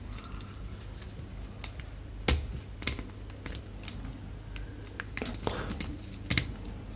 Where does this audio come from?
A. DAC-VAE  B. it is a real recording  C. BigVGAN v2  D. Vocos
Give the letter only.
B